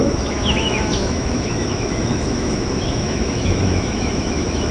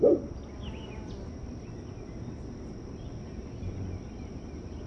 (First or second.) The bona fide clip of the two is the second